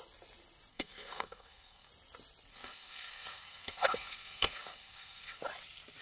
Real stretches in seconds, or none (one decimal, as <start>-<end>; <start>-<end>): 0.0-0.7; 1.9-2.5; 5.4-6.0